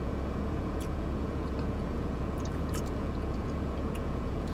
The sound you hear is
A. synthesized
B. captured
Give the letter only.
A